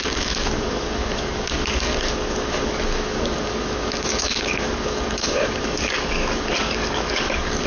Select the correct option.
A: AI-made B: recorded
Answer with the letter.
A